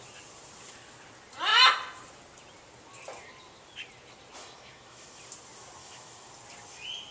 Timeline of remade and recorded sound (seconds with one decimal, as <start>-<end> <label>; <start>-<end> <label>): 0.0-4.4 recorded; 4.4-5.2 remade; 5.2-5.8 recorded; 5.8-6.3 remade; 6.3-7.1 recorded